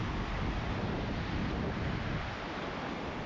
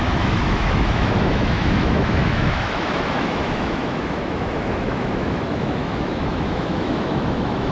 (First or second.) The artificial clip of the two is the second